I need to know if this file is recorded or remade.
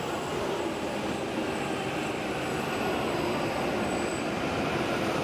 recorded